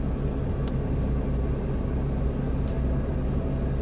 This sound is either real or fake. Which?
real